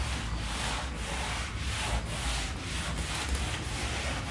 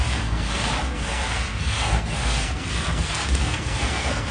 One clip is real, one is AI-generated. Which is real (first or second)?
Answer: first